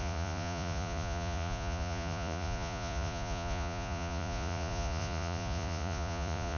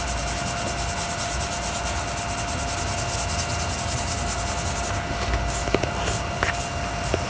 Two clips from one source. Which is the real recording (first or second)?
second